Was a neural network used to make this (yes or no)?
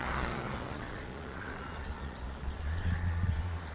yes